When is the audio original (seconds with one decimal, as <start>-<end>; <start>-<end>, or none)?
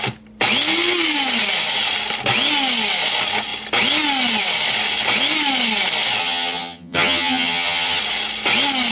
0.0-6.2; 8.0-8.9